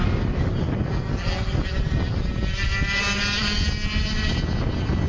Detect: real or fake real